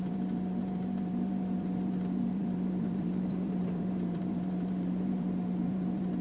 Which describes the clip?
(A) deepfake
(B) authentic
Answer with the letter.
A